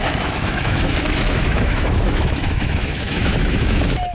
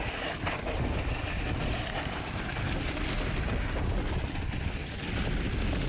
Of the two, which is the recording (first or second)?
second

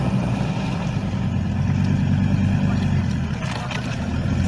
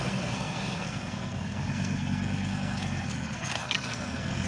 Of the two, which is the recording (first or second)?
first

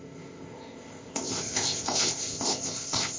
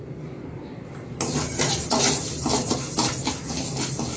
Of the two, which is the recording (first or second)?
second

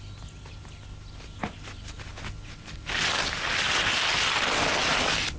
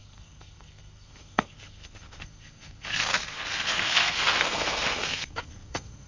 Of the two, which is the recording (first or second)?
first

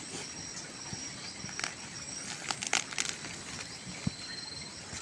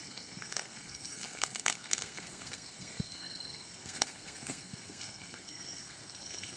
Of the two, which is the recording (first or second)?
first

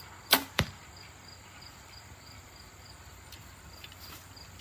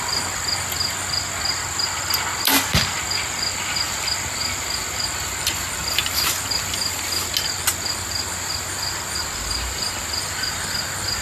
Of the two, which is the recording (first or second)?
second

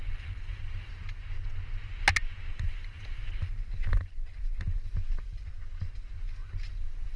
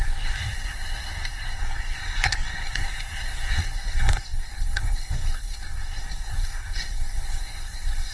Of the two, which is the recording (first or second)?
first